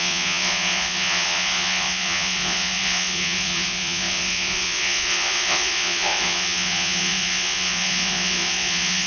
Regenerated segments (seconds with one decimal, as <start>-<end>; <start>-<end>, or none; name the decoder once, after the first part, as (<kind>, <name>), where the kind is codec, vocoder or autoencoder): 0.0-9.1 (vocoder, Vocos)